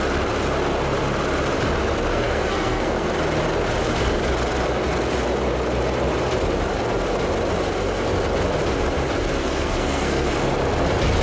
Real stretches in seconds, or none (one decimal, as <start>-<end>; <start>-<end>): 0.0-2.1; 3.1-9.4; 10.3-11.2